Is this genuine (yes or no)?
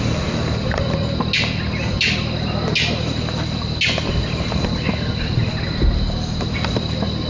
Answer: yes